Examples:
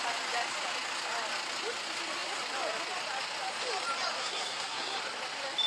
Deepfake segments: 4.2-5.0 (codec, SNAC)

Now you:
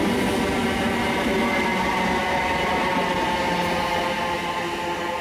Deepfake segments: none

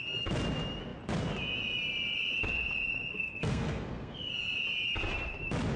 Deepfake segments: 3.1-4.3 (codec, SNAC)

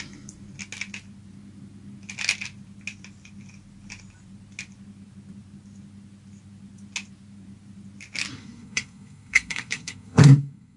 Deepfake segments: 8.3-10.8 (codec, SNAC)

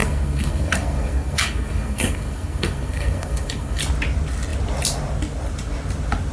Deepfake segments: 0.0-3.8 (codec, SNAC)

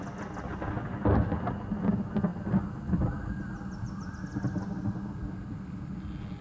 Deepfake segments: none